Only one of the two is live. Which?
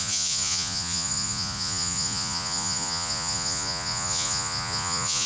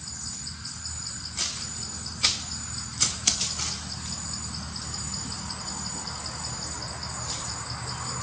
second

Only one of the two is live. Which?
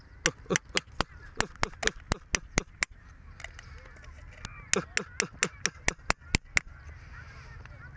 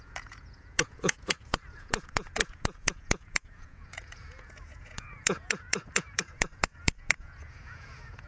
first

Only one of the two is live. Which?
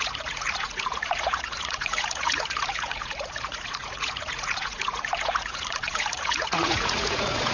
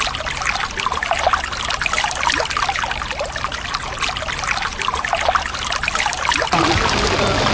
second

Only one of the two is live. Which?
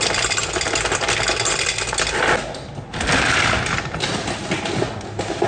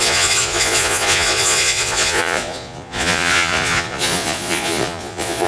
first